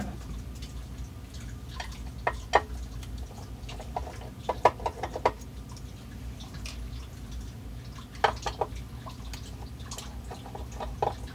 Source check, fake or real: real